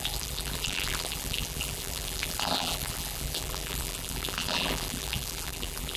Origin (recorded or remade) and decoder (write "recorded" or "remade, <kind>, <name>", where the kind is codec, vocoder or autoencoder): remade, vocoder, BigVGAN v2